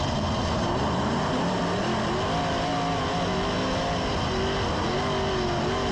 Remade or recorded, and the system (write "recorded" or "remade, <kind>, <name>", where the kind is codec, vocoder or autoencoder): recorded